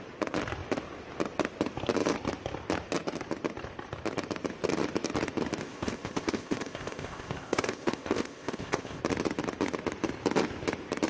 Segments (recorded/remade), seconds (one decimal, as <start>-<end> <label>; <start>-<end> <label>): 0.0-5.6 recorded; 5.6-9.0 remade; 9.0-11.1 recorded